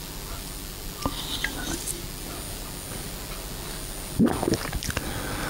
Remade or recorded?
recorded